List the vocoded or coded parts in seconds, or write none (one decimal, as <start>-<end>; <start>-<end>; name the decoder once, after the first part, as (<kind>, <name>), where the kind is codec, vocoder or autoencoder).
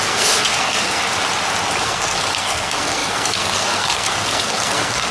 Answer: 0.0-1.0 (codec, SNAC); 1.8-5.1